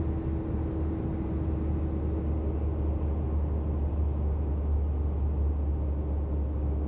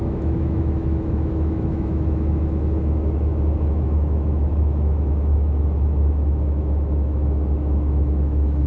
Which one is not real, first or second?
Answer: second